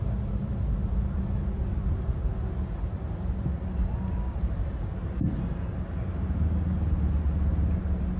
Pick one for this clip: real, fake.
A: real